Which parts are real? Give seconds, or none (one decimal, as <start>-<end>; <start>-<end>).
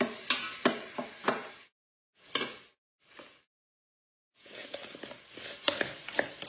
0.0-1.2; 2.3-3.9; 4.8-6.5